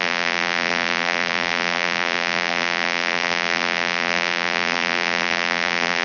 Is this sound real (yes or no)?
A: no